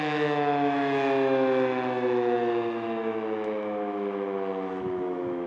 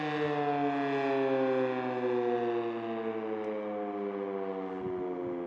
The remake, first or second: first